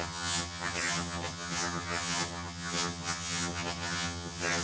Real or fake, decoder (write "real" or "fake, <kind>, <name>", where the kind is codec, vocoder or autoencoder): fake, vocoder, HiFi-GAN